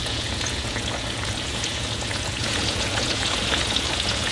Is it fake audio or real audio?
fake